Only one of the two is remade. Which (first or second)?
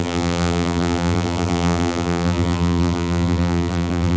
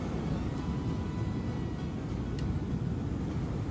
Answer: first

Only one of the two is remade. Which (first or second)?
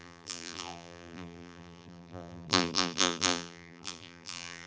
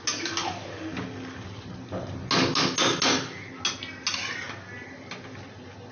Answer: first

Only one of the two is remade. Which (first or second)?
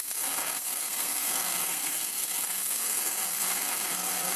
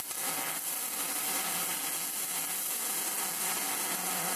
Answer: first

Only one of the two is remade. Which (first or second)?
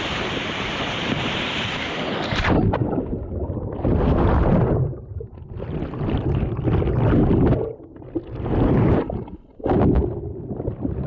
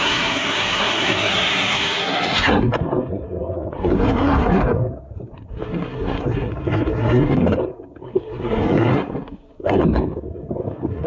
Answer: second